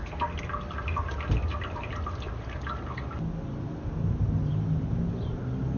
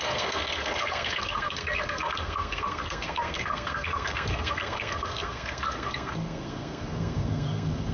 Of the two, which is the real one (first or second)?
first